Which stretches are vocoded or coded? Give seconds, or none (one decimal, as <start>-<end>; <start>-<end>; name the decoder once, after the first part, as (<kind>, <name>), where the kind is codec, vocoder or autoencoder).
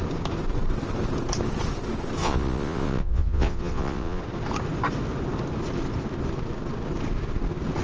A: 2.2-4.2 (vocoder, Vocos)